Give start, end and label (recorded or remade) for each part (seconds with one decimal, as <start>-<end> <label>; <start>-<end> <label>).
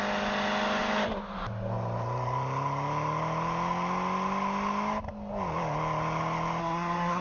0.0-6.6 recorded; 6.6-7.2 remade